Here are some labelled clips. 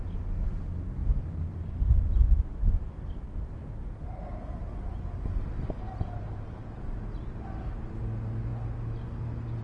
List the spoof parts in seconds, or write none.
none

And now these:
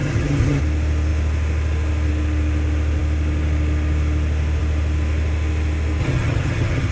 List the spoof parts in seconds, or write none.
0.0-0.6 (vocoder, HiFi-GAN); 6.0-6.9

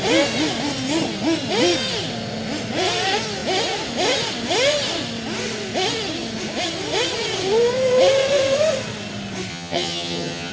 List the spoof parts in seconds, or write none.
9.5-10.5 (vocoder, HiFi-GAN)